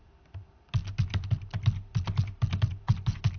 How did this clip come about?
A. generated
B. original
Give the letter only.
B